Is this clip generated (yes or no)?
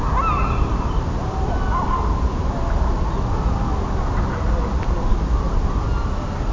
no